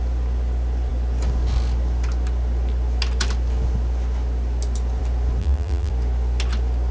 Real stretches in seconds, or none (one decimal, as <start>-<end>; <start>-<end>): 0.0-5.4; 5.9-6.9

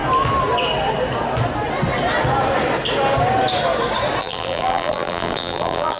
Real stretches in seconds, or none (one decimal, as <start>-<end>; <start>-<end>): 0.0-4.2

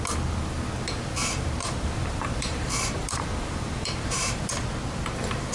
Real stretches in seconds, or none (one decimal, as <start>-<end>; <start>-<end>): 0.0-1.2; 4.5-5.5

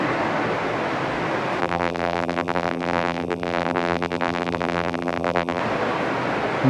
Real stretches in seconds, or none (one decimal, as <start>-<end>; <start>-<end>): 0.0-1.6; 5.6-6.7

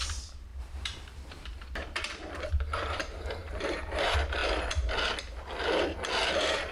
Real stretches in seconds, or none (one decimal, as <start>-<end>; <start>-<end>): 4.4-6.3

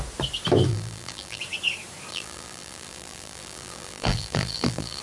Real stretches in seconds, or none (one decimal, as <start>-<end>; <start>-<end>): 0.0-0.7; 1.4-2.1

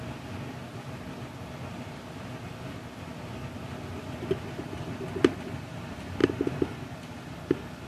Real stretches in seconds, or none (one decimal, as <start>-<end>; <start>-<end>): 3.1-3.9